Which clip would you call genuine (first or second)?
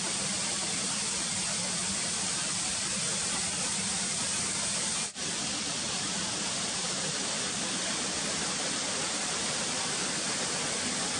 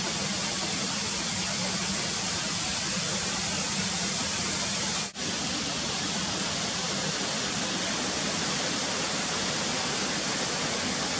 second